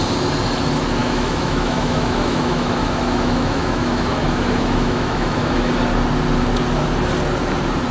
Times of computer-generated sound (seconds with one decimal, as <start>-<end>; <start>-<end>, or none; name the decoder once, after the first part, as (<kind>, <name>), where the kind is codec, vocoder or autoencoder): 1.0-5.7 (autoencoder, DAC-VAE)